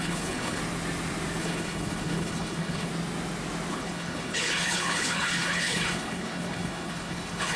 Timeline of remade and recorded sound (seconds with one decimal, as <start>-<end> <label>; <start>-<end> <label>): 0.0-0.6 remade; 0.6-1.4 recorded; 1.4-2.9 remade; 2.9-3.7 recorded; 3.7-7.6 remade